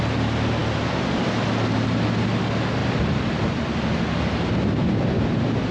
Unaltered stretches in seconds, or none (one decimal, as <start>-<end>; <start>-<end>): 0.0-0.6; 1.2-2.8; 3.6-5.7